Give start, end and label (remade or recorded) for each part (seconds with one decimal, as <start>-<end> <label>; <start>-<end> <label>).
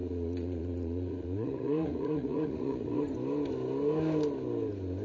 0.0-3.0 remade; 3.0-5.0 recorded